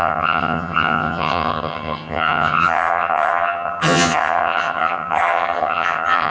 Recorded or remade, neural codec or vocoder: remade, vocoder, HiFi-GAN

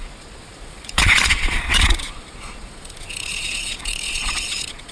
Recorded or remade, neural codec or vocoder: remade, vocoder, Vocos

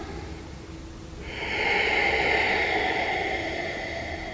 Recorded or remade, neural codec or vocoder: recorded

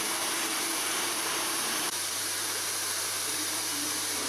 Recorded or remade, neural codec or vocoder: remade, vocoder, BigVGAN v2